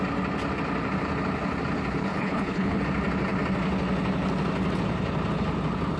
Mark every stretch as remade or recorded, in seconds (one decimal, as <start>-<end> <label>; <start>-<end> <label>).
0.0-2.0 recorded; 2.0-2.8 remade; 2.8-6.0 recorded